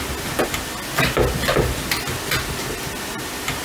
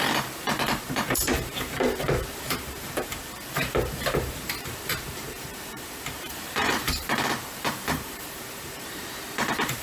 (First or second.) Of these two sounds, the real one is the first